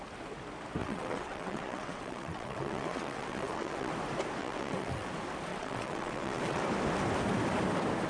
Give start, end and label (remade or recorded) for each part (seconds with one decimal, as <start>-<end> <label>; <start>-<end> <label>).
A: 0.0-0.8 recorded; 0.8-3.9 remade; 3.9-4.4 recorded; 4.4-5.1 remade; 5.1-5.5 recorded; 5.5-6.6 remade; 6.6-8.1 recorded